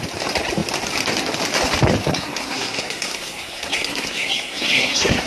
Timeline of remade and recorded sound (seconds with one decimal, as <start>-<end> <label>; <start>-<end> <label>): 0.0-2.0 recorded; 2.0-5.3 remade